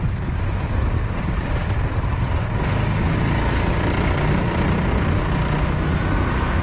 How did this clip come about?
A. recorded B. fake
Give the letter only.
A